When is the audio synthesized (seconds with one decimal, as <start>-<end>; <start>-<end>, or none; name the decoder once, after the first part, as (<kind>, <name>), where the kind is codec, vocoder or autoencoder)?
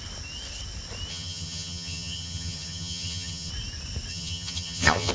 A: 1.1-3.5 (vocoder, HiFi-GAN); 4.1-5.1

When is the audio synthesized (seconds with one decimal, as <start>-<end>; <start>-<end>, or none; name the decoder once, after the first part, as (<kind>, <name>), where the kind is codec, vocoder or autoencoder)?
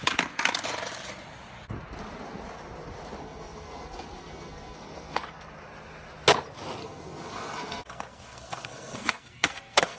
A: 3.2-5.4 (codec, SNAC); 6.8-10.0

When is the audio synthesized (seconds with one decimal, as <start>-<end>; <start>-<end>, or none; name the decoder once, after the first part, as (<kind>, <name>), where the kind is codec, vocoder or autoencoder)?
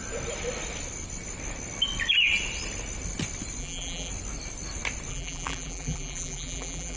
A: 3.6-4.1 (vocoder, BigVGAN v2); 5.1-7.0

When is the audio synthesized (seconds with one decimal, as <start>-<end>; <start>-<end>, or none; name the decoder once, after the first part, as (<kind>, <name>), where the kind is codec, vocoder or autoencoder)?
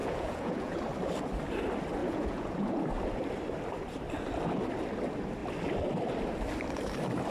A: 0.0-0.8 (vocoder, Vocos); 2.0-2.8